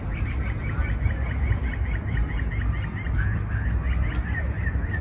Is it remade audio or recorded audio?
recorded